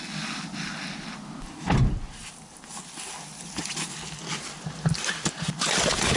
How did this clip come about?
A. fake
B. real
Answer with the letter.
B